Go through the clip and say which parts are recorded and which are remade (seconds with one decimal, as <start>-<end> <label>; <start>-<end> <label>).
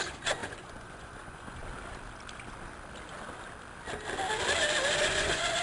0.0-1.6 remade; 1.6-5.0 recorded; 5.0-5.6 remade